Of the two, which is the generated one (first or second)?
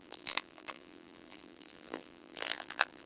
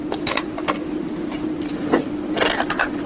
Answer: first